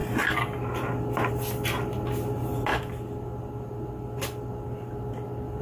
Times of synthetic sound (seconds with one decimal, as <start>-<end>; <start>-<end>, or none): none